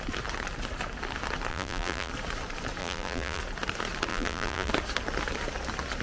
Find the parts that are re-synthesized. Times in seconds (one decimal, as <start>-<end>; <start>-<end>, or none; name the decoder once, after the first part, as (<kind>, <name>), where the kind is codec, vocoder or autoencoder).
1.5-2.1 (vocoder, BigVGAN v2); 2.8-3.4; 4.1-4.7